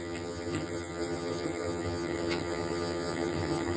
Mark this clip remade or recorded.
remade